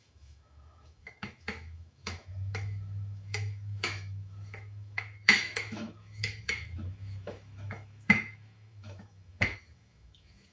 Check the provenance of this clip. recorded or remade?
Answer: remade